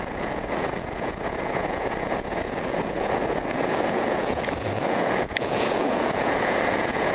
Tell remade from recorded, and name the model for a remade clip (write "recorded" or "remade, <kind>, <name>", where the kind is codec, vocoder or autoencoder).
remade, vocoder, Vocos